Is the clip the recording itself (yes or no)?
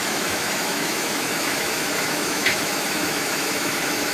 no